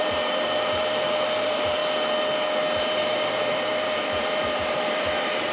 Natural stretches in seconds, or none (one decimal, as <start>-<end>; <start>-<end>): 1.8-2.8